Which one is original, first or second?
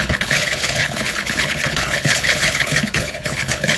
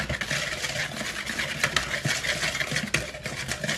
second